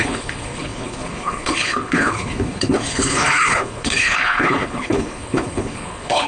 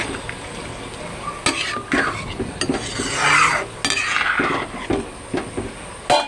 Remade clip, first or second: first